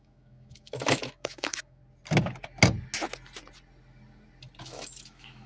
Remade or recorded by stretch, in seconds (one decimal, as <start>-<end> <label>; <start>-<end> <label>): 0.0-1.8 remade; 1.8-4.6 recorded; 4.6-5.5 remade